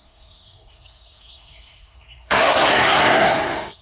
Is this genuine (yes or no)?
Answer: no